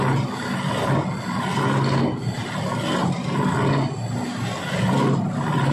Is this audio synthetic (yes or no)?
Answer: no